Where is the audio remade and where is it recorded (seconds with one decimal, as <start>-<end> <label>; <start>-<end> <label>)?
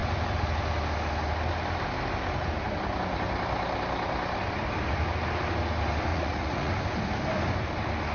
0.0-6.1 recorded; 6.1-6.7 remade; 6.7-8.1 recorded